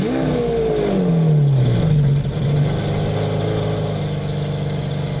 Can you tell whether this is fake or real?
real